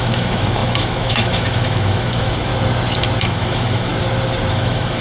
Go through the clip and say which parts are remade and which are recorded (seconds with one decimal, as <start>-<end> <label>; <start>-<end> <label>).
0.0-2.5 remade; 2.5-3.2 recorded; 3.2-3.9 remade; 3.9-4.5 recorded; 4.5-5.0 remade